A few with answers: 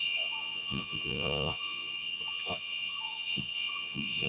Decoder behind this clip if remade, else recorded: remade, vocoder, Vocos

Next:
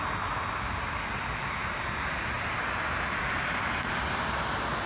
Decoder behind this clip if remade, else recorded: recorded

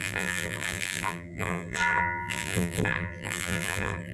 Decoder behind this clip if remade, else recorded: remade, vocoder, BigVGAN v2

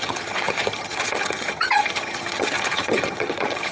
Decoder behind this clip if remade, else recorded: remade, vocoder, HiFi-GAN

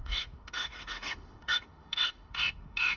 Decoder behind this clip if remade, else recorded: remade, autoencoder, DAC-VAE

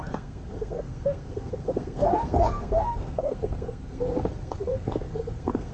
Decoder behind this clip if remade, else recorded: remade, codec, SNAC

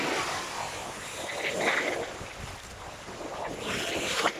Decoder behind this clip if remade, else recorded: recorded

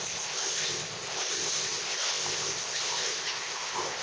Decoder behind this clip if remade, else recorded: remade, codec, ZipCodec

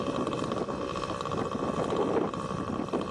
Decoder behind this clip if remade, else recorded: recorded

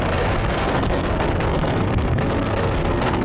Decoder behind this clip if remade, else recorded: remade, codec, SNAC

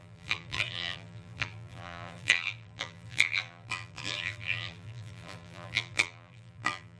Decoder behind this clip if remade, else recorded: remade, vocoder, BigVGAN v2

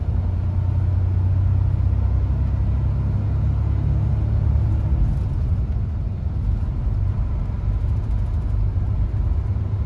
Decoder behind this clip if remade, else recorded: recorded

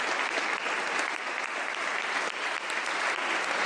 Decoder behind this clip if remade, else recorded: recorded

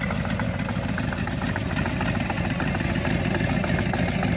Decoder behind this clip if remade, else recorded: recorded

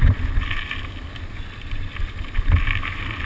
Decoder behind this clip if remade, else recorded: recorded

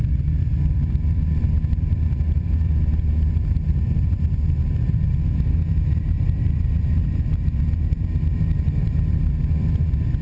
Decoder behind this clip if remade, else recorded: remade, vocoder, BigVGAN v2